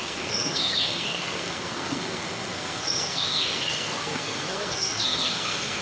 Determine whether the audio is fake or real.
fake